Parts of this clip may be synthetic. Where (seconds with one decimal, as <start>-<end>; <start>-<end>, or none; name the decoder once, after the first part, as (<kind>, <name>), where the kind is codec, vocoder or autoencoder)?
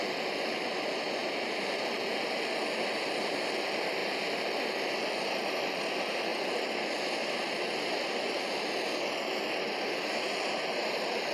1.2-1.7 (vocoder, BigVGAN v2); 4.0-5.8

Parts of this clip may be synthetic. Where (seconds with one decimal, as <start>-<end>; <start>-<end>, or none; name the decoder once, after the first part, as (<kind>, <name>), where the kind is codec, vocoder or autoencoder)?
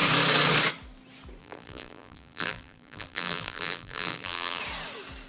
1.4-4.6 (vocoder, BigVGAN v2)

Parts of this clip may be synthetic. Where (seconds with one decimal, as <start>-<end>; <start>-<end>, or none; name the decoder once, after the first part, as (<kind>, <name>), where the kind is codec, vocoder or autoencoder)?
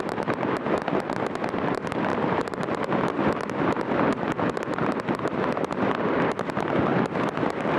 none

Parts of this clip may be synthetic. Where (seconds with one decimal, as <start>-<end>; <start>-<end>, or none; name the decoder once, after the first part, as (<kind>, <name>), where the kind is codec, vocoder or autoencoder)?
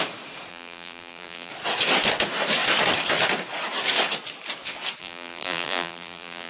0.5-1.5 (vocoder, BigVGAN v2); 5.0-6.5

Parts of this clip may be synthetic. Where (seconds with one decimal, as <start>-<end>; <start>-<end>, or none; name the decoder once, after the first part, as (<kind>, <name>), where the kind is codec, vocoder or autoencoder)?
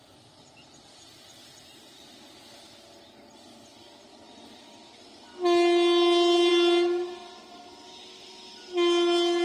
none